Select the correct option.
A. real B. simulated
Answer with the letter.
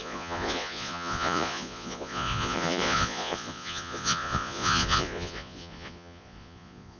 B